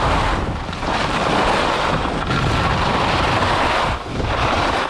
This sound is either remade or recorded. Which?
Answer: recorded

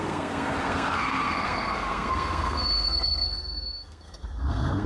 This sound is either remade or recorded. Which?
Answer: remade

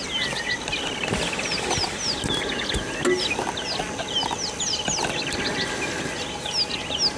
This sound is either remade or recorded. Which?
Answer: recorded